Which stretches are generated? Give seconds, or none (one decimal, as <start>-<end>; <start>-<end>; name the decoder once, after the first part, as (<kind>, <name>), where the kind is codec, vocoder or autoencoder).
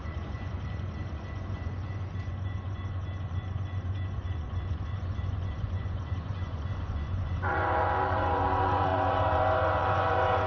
0.0-10.5 (vocoder, Vocos)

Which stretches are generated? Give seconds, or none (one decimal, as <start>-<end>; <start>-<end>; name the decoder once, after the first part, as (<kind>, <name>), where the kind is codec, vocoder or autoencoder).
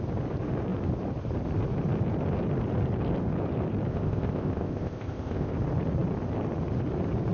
3.9-5.5 (codec, ZipCodec)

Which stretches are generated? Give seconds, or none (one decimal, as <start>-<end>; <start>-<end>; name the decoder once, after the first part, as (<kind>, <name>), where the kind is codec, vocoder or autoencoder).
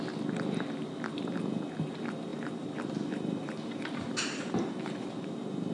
2.3-5.7 (vocoder, BigVGAN v2)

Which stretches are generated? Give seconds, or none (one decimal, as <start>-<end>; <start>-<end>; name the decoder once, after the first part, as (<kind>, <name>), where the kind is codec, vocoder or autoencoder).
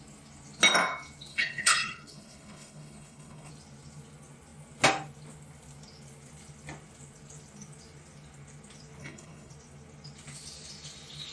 1.3-3.5 (codec, HILCodec); 9.0-9.5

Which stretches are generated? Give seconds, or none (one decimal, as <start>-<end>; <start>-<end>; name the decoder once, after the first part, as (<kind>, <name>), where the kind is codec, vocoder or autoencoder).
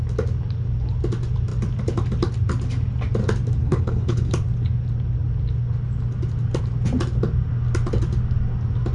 3.6-4.3 (codec, HILCodec)